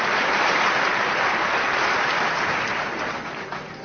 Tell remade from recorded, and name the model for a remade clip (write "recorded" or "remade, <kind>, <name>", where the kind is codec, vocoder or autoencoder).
remade, vocoder, BigVGAN v2